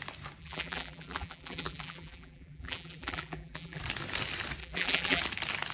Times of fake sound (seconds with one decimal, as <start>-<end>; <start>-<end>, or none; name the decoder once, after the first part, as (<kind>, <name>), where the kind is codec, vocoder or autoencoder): 0.4-3.8 (vocoder, BigVGAN v2); 4.6-5.2